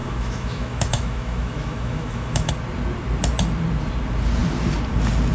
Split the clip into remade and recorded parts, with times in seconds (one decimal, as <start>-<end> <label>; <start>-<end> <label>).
0.0-2.5 remade; 2.5-5.3 recorded